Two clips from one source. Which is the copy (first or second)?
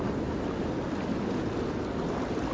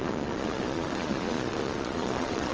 second